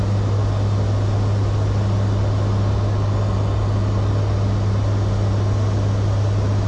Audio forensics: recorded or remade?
recorded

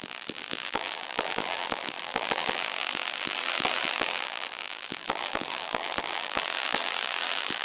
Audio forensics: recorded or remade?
remade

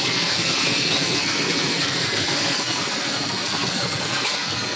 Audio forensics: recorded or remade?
remade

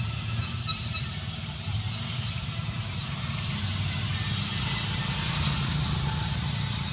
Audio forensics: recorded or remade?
remade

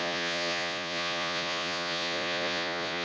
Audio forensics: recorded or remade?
remade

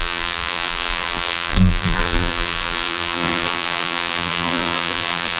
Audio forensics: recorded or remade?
remade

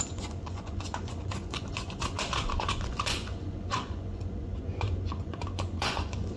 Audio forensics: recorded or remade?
remade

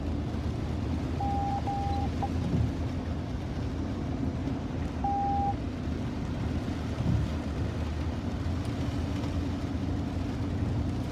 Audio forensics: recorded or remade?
recorded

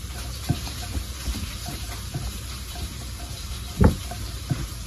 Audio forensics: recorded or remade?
remade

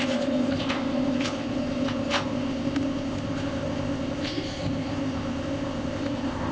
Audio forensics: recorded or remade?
remade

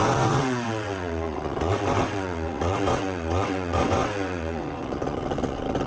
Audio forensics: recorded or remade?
remade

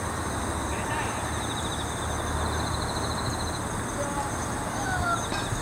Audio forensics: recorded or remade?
recorded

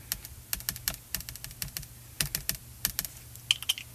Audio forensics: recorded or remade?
recorded